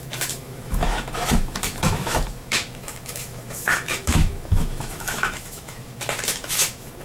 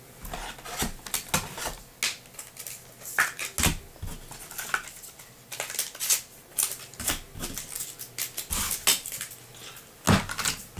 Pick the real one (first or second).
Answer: second